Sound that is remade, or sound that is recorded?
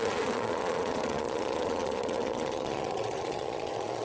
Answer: remade